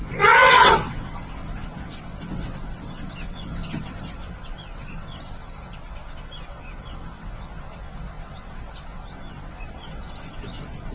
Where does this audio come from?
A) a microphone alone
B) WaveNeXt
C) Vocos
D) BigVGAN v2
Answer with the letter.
B